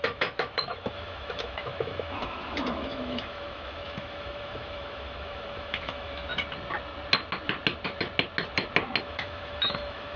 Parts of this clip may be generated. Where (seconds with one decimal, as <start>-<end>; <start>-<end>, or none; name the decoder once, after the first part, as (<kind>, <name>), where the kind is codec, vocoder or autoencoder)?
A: 0.0-6.3 (autoencoder, DAC-VAE); 9.0-10.2